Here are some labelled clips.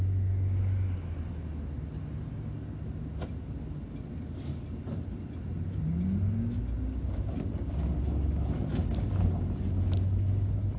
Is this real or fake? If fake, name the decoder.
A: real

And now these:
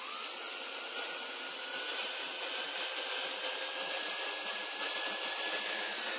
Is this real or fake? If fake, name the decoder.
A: real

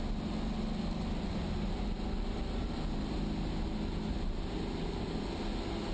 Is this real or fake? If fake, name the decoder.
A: real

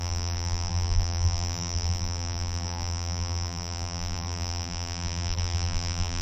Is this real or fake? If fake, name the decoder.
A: fake, vocoder, BigVGAN v2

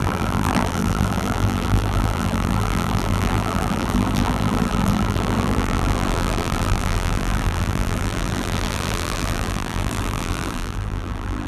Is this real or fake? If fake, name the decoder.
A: fake, vocoder, BigVGAN v2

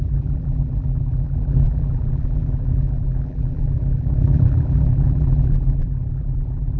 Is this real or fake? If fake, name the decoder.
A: fake, vocoder, BigVGAN v2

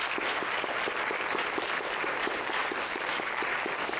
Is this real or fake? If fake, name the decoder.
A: real